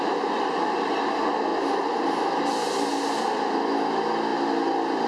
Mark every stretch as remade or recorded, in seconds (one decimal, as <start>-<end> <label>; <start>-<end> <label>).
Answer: 0.0-5.1 recorded